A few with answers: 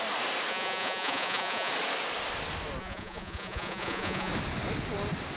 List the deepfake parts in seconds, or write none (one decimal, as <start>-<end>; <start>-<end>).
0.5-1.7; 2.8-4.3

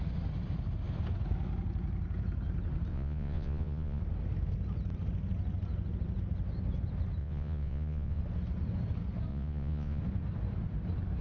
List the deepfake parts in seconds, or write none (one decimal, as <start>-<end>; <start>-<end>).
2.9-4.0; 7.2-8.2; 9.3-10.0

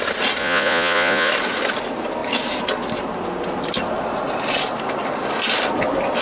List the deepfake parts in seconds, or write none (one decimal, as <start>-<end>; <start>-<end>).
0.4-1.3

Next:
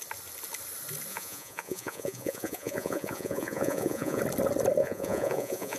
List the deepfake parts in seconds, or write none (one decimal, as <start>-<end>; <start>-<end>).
1.1-4.2; 4.8-5.8

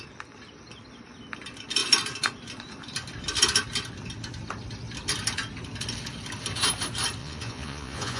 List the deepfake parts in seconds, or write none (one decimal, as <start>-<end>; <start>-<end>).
7.2-8.2